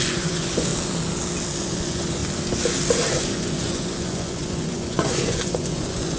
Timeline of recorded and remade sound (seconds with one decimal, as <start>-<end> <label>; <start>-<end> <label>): 0.0-0.7 remade; 0.7-1.6 recorded; 1.6-2.2 remade; 2.2-3.1 recorded; 3.1-6.2 remade